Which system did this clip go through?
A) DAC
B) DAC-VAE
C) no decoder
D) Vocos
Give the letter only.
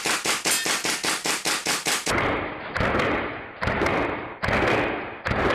C